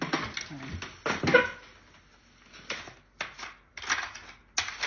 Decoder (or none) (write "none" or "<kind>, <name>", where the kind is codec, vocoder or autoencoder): none